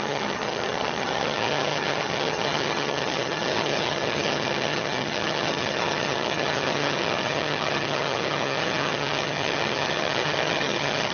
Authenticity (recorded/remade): remade